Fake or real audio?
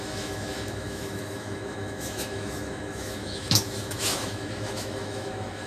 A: fake